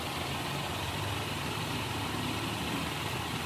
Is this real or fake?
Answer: real